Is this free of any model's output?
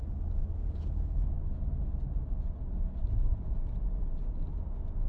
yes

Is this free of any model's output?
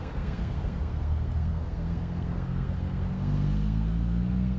no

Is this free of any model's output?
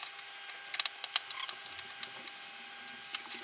yes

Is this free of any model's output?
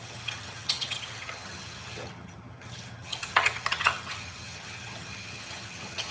no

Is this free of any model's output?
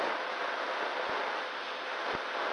yes